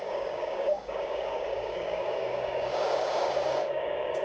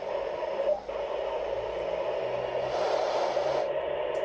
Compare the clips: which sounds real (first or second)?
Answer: second